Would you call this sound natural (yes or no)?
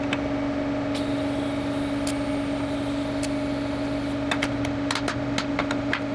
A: yes